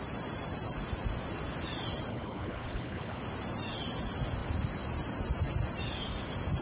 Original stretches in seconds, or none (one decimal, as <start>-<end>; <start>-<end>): 0.0-2.1; 3.2-6.6